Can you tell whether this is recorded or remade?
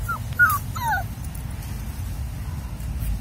recorded